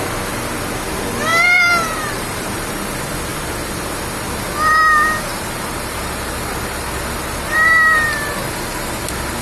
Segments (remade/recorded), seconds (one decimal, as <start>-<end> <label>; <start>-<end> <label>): 0.0-1.3 recorded; 1.3-2.7 remade; 2.7-5.3 recorded; 5.3-8.5 remade; 8.5-9.4 recorded